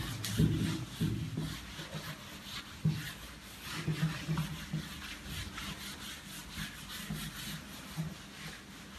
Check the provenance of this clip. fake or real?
real